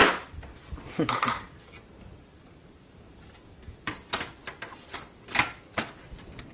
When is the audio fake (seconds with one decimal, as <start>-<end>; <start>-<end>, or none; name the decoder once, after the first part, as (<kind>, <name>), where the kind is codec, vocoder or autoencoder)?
0.0-3.9 (vocoder, BigVGAN v2)